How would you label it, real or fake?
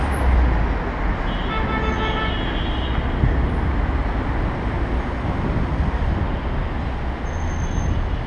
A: real